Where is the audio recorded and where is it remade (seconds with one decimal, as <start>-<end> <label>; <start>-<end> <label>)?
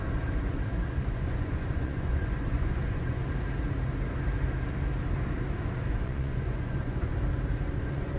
0.0-3.2 remade; 3.2-5.9 recorded; 5.9-7.1 remade; 7.1-7.7 recorded; 7.7-8.2 remade